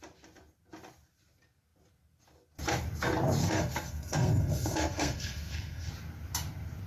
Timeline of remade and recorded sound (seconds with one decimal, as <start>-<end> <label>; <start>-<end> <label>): 0.0-3.4 recorded; 3.4-5.9 remade; 5.9-6.9 recorded